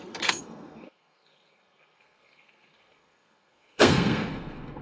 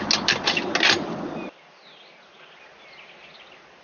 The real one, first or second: second